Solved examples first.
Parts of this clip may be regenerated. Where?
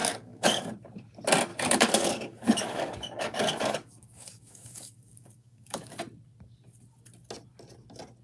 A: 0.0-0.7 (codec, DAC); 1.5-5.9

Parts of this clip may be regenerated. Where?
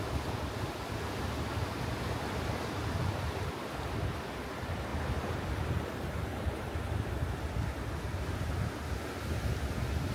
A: 4.9-5.7 (vocoder, BigVGAN v2); 6.3-6.8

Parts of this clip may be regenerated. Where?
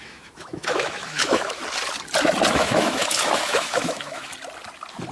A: 0.0-1.6 (autoencoder, DAC-VAE); 2.5-4.3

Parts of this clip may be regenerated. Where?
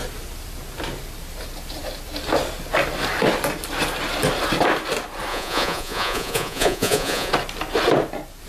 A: 5.3-7.3 (vocoder, Vocos)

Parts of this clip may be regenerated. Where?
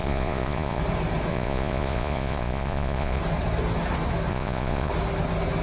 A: 0.0-0.8 (vocoder, Vocos); 1.3-3.2; 4.3-4.9